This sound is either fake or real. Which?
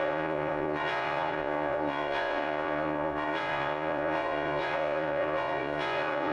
fake